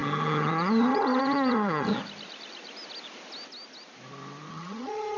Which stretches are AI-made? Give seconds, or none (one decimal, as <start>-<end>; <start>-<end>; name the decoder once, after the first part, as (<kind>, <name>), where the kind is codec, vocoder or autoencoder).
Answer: 0.0-1.9 (vocoder, HiFi-GAN); 4.5-5.2